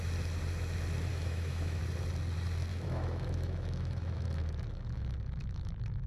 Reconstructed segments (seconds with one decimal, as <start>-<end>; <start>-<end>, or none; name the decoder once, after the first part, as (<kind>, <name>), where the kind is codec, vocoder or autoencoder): 1.1-1.8 (autoencoder, DAC-VAE); 2.7-6.1